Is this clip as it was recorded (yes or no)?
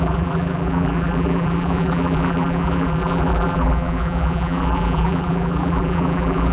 no